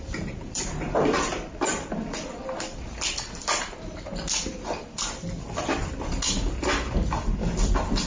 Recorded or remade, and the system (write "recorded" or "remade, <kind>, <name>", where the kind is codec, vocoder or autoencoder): recorded